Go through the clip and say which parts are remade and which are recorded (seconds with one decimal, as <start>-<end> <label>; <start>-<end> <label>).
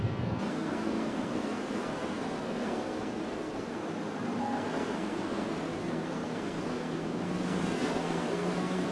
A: 0.0-3.8 remade; 3.8-4.4 recorded; 4.4-8.9 remade